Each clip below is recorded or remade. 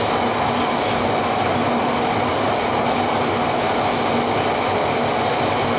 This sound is recorded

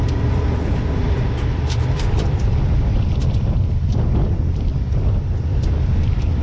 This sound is remade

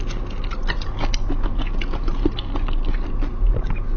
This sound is recorded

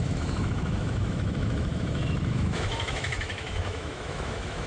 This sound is remade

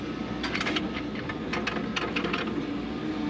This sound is recorded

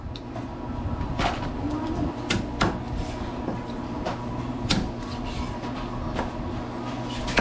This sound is recorded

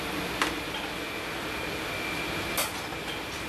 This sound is recorded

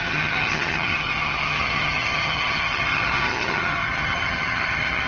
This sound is remade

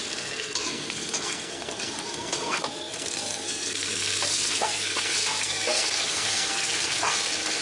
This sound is remade